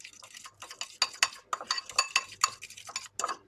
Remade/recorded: recorded